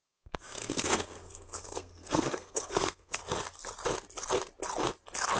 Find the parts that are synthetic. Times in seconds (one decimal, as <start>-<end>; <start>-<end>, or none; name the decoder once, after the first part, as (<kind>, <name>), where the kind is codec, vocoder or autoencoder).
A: 0.0-3.2 (codec, SNAC)